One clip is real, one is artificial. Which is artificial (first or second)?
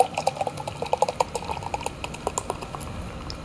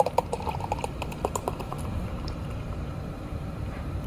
second